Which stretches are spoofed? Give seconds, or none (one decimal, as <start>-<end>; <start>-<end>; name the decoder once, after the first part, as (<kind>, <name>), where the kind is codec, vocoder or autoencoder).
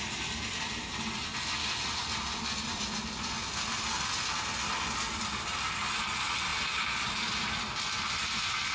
none